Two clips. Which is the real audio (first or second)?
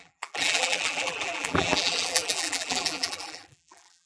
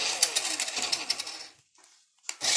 second